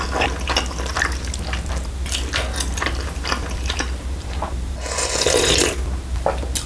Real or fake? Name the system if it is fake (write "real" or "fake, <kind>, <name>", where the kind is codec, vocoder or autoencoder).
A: real